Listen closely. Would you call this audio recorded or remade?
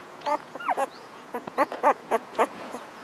remade